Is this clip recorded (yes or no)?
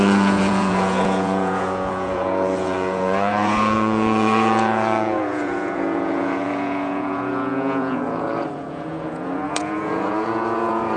no